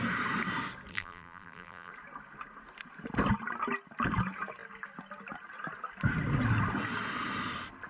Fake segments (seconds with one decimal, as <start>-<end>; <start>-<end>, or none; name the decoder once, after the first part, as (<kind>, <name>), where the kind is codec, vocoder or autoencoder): 0.9-1.9 (vocoder, BigVGAN v2)